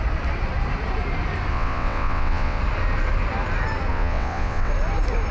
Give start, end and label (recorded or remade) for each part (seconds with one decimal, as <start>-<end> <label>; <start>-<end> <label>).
0.0-1.5 recorded; 1.5-2.6 remade; 2.6-3.9 recorded; 3.9-4.7 remade; 4.7-5.3 recorded